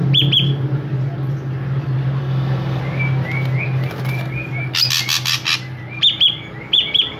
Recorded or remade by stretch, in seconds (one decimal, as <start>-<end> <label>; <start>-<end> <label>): 0.0-2.2 recorded; 2.2-2.8 remade; 2.8-7.2 recorded